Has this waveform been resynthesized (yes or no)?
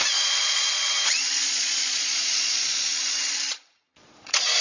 yes